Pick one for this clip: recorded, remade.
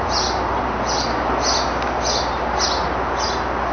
recorded